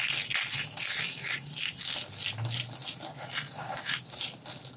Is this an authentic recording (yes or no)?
yes